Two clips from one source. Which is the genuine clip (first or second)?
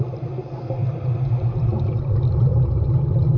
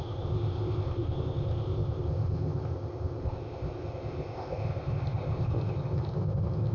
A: first